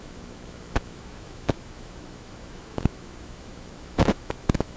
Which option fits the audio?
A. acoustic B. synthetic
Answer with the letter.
B